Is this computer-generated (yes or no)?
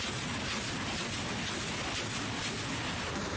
no